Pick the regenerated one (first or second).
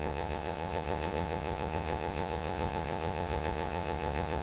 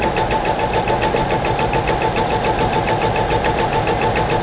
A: first